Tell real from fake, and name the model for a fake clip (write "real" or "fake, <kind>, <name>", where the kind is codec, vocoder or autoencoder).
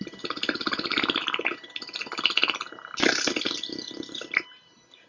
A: real